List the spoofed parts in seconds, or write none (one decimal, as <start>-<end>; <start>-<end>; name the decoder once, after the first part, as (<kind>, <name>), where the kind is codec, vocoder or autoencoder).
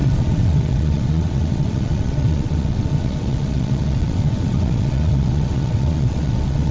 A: 0.0-6.7 (vocoder, WaveNeXt)